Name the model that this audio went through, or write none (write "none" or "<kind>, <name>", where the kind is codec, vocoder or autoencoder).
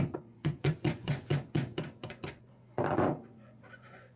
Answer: vocoder, Vocos